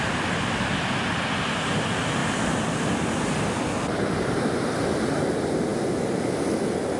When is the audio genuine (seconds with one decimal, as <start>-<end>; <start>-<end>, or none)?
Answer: 0.0-2.2; 4.7-7.0